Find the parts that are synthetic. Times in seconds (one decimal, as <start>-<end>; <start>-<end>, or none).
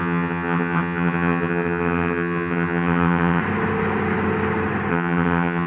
0.0-3.4; 4.9-5.7